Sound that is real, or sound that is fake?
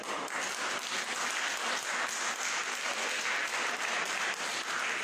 real